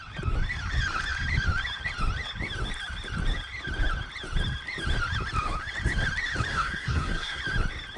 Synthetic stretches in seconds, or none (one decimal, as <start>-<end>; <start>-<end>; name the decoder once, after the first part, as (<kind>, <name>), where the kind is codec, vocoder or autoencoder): 6.5-7.4 (codec, SNAC)